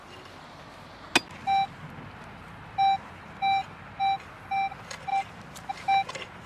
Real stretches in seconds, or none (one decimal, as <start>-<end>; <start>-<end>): 0.0-6.5